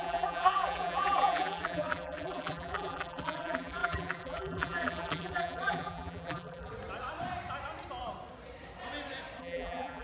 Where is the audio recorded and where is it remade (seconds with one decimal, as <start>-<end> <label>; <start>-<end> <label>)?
0.0-6.7 remade; 6.7-9.4 recorded; 9.4-10.0 remade